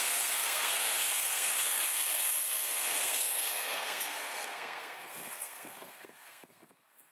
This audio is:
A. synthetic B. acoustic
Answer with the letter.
A